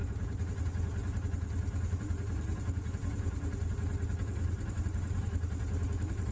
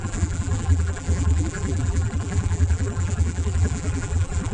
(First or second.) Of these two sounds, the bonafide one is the first